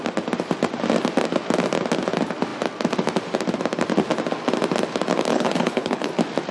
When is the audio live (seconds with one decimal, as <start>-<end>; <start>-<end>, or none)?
0.0-5.3; 6.1-6.5